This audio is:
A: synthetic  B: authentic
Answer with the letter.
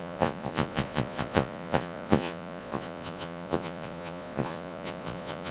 A